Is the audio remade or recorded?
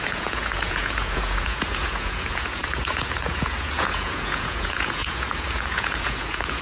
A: remade